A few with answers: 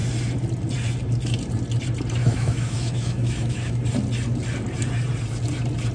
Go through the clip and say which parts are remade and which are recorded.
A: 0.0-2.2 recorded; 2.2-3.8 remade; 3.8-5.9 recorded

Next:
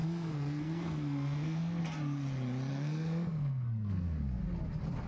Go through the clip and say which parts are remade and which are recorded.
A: 0.0-1.8 remade; 1.8-2.7 recorded; 2.7-4.4 remade; 4.4-5.1 recorded

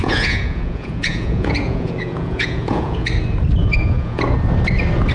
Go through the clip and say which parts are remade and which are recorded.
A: 0.0-3.1 remade; 3.1-3.6 recorded; 3.6-4.2 remade; 4.2-5.1 recorded

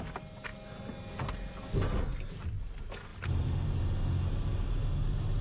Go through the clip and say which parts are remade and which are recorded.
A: 0.0-5.4 recorded

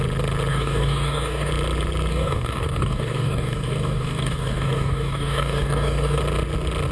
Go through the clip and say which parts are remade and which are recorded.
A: 0.0-0.5 recorded; 0.5-1.5 remade; 1.5-2.1 recorded; 2.1-6.2 remade; 6.2-6.9 recorded

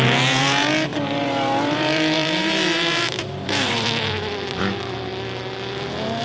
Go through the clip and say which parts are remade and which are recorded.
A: 0.0-0.9 recorded; 0.9-4.6 remade; 4.6-6.2 recorded

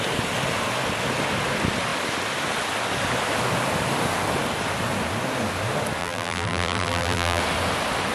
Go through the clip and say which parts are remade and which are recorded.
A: 0.0-6.0 recorded; 6.0-7.4 remade; 7.4-8.1 recorded

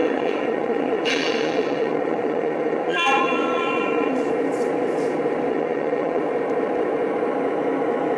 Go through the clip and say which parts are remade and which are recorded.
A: 0.0-4.3 remade; 4.3-5.5 recorded; 5.5-6.2 remade; 6.2-8.2 recorded